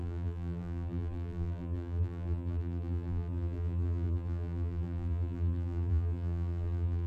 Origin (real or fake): fake